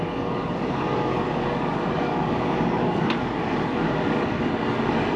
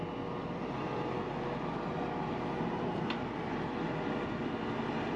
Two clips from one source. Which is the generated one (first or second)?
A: first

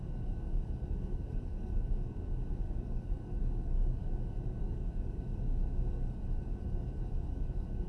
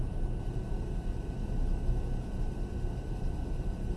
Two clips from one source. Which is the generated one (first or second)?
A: first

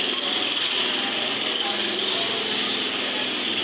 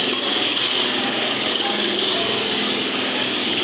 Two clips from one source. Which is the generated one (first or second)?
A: second